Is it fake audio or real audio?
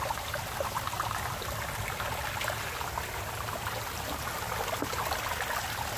real